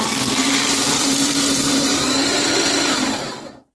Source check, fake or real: fake